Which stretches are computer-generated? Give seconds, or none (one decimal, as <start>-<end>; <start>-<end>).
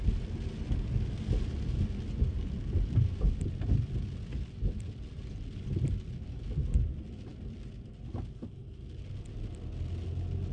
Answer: none